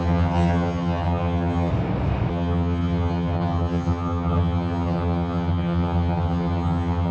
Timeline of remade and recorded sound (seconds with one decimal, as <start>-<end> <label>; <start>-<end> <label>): 0.0-1.7 remade; 1.7-2.3 recorded; 2.3-7.1 remade